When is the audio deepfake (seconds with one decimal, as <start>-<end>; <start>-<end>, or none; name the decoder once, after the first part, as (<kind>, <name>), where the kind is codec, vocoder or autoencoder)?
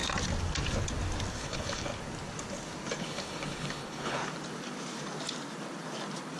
1.3-1.9 (codec, HILCodec); 3.0-4.2